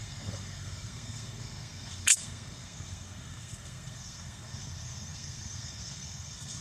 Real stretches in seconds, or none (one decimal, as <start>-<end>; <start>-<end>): none